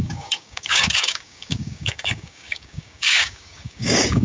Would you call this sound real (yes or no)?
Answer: no